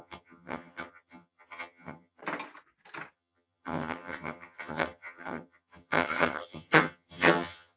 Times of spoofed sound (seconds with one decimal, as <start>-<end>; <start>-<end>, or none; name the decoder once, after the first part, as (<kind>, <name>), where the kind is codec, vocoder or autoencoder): 0.0-2.2 (vocoder, HiFi-GAN); 3.1-7.8